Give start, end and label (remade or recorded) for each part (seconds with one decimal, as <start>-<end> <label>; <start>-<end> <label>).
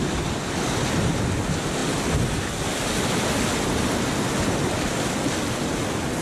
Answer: 0.0-6.2 recorded